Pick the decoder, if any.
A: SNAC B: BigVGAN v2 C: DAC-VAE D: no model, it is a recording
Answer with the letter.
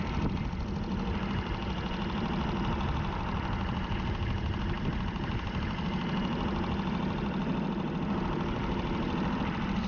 B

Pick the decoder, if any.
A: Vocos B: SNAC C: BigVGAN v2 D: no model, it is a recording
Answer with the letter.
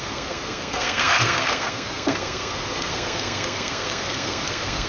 B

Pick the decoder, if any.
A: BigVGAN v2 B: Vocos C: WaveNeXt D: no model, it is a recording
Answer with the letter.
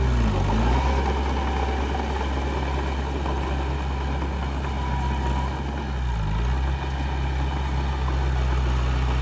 D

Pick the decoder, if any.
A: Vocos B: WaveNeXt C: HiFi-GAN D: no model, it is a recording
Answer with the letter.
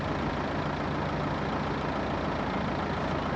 D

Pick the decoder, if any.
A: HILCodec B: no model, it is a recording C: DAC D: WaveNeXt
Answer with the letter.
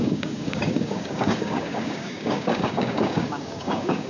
C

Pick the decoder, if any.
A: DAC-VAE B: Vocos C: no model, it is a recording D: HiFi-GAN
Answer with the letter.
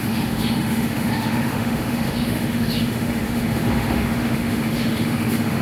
A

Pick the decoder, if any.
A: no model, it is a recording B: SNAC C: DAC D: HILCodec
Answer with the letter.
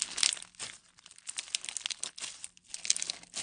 A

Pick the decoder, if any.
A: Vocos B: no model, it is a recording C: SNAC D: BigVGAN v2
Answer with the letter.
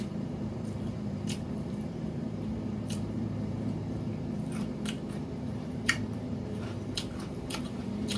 D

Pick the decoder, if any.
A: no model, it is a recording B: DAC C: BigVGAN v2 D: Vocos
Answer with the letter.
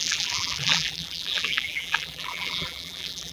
C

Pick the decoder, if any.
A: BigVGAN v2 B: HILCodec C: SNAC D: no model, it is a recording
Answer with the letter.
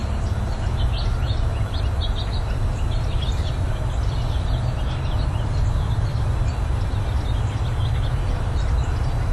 D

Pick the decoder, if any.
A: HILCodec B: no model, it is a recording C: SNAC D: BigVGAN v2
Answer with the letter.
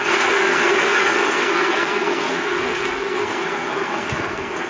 C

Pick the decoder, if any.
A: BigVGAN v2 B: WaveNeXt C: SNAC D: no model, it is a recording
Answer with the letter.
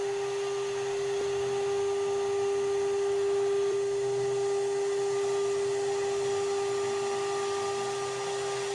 D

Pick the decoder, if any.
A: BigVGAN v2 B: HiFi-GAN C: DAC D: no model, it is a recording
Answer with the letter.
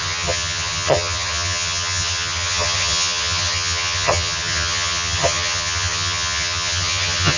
B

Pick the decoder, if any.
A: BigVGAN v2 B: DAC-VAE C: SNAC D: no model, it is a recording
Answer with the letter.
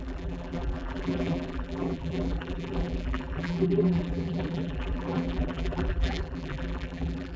A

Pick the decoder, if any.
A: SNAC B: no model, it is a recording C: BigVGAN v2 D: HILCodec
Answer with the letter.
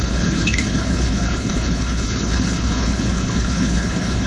D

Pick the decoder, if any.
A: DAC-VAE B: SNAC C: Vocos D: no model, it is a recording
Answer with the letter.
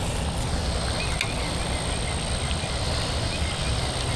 D